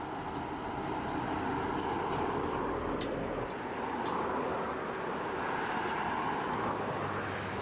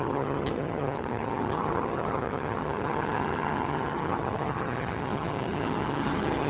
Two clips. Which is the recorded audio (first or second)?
first